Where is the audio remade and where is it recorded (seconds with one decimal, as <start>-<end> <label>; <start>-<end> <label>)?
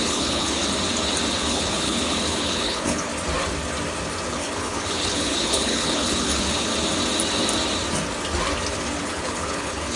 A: 0.0-0.6 remade; 0.6-1.4 recorded; 1.4-3.1 remade; 3.1-4.3 recorded; 4.3-6.7 remade; 6.7-9.0 recorded; 9.0-10.0 remade